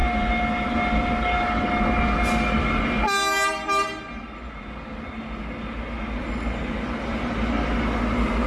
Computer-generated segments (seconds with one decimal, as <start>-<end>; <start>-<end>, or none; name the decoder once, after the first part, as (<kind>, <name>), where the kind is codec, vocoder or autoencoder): none